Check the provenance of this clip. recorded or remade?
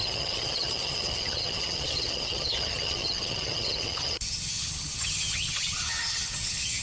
remade